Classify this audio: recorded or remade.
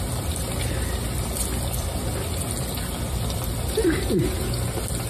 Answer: remade